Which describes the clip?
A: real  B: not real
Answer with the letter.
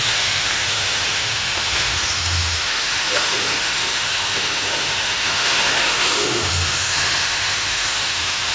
B